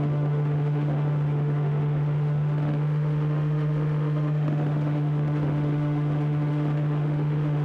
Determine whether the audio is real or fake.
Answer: fake